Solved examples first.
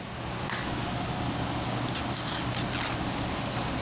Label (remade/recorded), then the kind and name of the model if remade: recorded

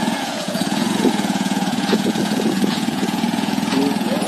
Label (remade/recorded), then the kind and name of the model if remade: remade, vocoder, Vocos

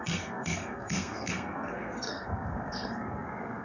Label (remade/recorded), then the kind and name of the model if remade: remade, codec, SNAC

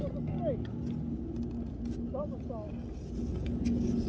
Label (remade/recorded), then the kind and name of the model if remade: recorded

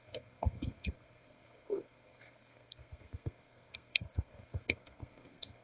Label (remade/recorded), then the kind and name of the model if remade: remade, codec, SNAC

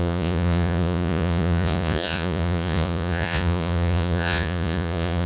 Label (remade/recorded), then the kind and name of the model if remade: remade, vocoder, Vocos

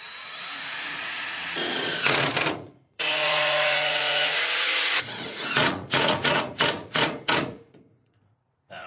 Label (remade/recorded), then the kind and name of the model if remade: remade, vocoder, Vocos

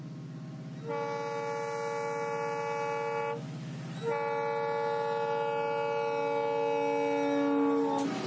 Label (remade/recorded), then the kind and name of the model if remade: recorded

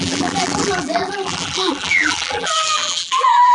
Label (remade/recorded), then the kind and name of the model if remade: remade, vocoder, BigVGAN v2